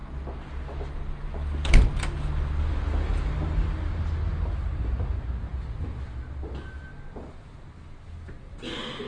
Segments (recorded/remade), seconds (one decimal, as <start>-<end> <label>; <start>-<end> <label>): 0.0-9.1 recorded